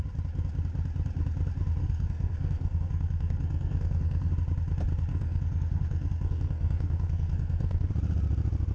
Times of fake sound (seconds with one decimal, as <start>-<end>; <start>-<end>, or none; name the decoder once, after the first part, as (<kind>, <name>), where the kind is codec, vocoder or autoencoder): 1.8-4.3 (codec, SNAC); 5.1-7.9